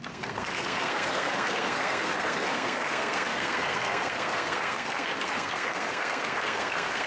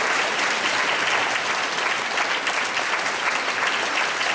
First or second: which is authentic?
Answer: second